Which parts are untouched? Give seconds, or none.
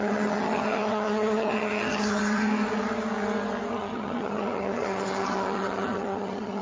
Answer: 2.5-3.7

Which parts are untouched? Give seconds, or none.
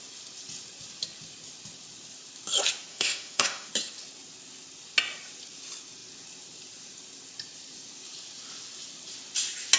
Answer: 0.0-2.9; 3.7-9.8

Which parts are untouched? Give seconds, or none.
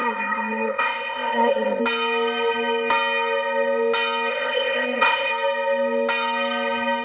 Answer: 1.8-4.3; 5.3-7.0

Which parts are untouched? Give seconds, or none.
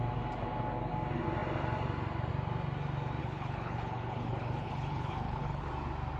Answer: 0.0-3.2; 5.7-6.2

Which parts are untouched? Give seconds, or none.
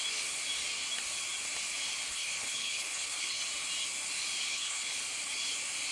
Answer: 0.0-2.1; 3.4-4.5; 5.0-5.9